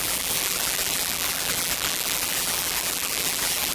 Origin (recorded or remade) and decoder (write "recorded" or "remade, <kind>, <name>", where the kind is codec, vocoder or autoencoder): remade, vocoder, BigVGAN v2